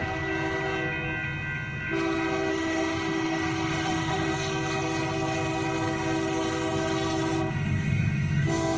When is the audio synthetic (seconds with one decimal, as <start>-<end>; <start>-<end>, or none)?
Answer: 2.5-4.3; 7.5-8.8